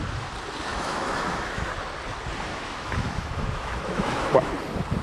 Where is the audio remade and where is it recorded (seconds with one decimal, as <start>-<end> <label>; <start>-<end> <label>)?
0.0-0.7 recorded; 0.7-1.7 remade; 1.7-2.5 recorded; 2.5-4.5 remade; 4.5-5.0 recorded